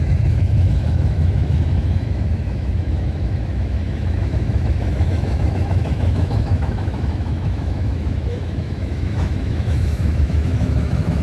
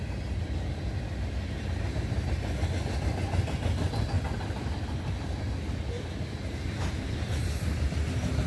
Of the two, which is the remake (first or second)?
first